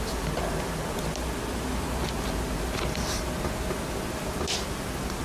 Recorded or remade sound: recorded